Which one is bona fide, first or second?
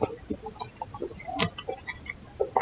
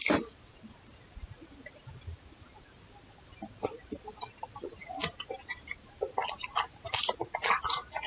first